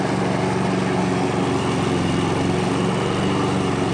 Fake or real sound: real